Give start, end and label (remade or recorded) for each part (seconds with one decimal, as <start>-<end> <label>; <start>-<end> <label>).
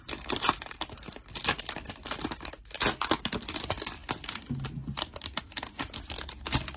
0.0-6.8 recorded